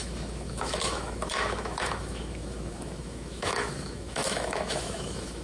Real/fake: fake